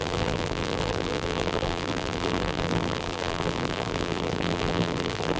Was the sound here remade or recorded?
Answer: remade